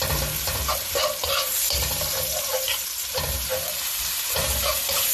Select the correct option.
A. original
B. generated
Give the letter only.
B